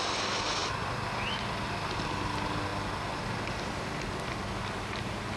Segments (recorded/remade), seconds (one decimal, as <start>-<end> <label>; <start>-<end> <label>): 0.0-5.4 recorded